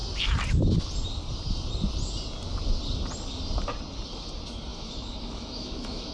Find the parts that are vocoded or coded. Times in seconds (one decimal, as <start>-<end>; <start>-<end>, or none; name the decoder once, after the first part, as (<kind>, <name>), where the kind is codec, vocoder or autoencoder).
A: 4.7-6.1 (autoencoder, DAC-VAE)